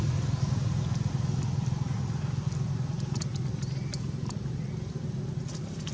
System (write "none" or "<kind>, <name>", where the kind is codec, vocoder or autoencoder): none